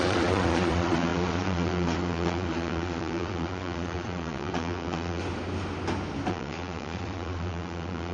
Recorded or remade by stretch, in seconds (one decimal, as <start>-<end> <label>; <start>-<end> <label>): 0.0-5.2 remade; 5.2-6.3 recorded; 6.3-8.1 remade